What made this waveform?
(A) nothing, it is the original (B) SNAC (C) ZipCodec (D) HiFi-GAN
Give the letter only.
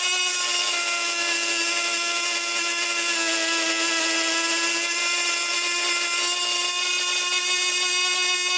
A